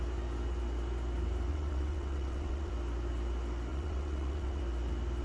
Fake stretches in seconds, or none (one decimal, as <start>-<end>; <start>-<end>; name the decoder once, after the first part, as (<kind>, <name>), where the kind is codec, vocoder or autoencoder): 1.5-2.7 (vocoder, WaveNeXt); 3.7-4.6